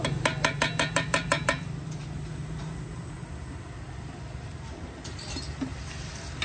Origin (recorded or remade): recorded